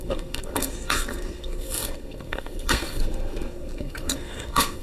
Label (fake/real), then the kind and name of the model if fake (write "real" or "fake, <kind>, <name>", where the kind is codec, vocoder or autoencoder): fake, codec, SNAC